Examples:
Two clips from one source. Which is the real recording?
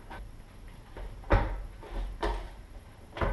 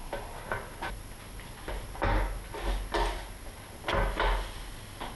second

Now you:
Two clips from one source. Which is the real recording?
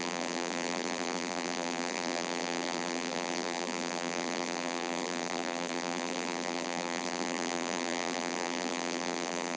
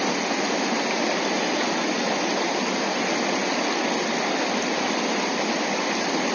second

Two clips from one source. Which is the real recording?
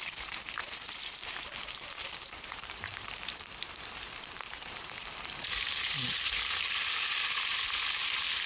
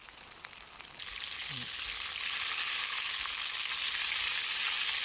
second